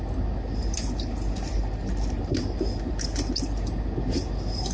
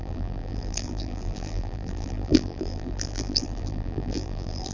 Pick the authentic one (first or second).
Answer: first